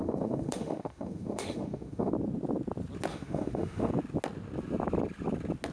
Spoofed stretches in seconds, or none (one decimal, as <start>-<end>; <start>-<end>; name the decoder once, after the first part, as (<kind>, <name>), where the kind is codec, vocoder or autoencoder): 0.0-2.1 (autoencoder, DAC-VAE); 3.1-3.9